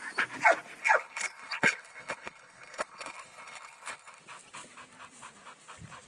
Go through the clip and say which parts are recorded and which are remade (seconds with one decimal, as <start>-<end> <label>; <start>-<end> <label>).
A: 0.0-0.8 recorded; 0.8-4.2 remade; 4.2-6.1 recorded